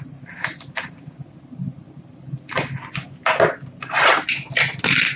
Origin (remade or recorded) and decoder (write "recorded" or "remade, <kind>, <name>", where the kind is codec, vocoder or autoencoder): recorded